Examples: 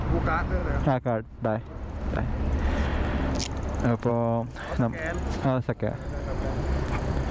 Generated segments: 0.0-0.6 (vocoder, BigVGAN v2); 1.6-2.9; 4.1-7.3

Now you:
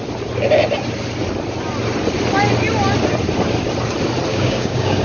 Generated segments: 4.3-5.0 (codec, DAC)

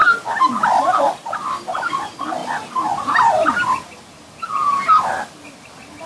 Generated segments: none

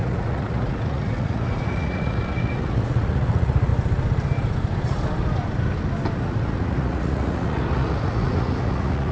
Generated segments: 0.0-3.7 (vocoder, Vocos); 6.2-9.1

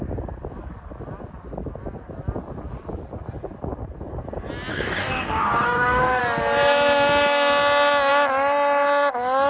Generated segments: 4.7-6.2 (codec, DAC)

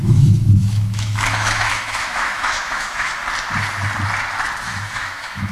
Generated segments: 0.0-3.2 (autoencoder, DAC-VAE); 4.6-5.5